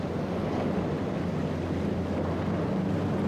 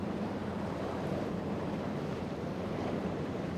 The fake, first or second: second